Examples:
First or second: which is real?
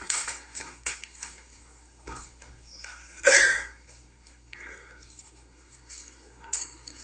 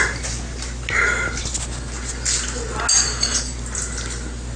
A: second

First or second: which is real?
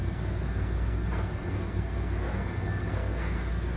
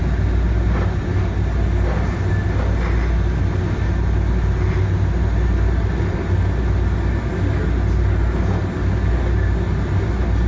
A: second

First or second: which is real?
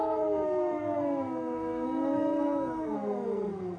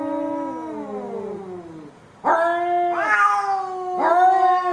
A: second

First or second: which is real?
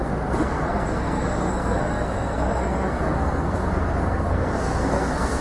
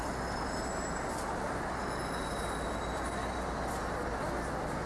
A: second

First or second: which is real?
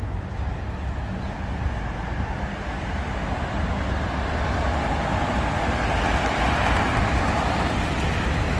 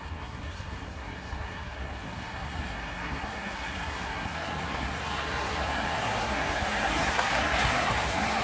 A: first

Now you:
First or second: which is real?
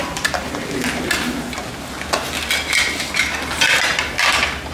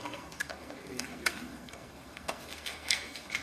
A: first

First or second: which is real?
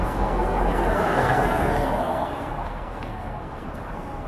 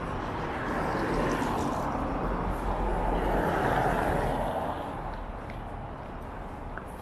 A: second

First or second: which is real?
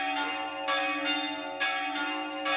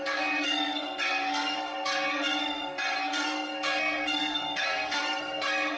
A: first